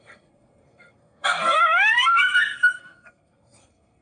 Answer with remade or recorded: remade